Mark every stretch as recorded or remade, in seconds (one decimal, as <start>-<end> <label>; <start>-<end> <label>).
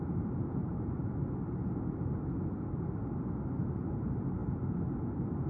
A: 0.0-1.2 remade; 1.2-3.9 recorded; 3.9-4.4 remade; 4.4-5.5 recorded